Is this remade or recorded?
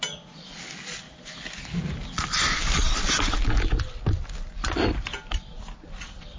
recorded